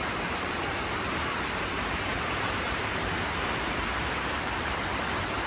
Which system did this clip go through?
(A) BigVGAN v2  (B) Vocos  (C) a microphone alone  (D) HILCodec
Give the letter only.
A